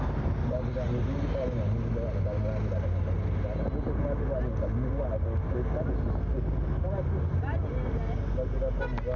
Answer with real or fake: real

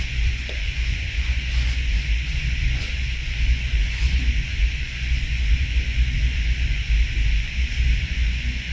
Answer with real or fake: fake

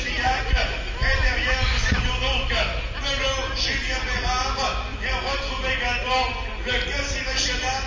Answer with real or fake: real